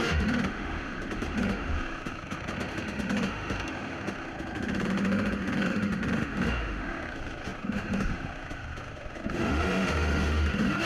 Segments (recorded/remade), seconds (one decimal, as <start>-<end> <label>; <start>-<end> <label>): 0.0-10.9 remade